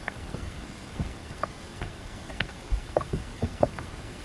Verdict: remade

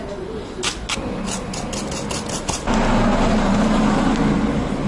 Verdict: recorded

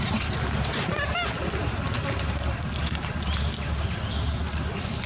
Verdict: recorded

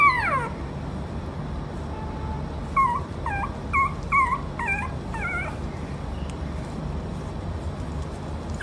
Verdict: recorded